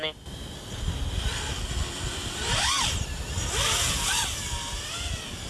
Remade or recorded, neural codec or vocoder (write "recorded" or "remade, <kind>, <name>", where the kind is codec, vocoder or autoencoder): recorded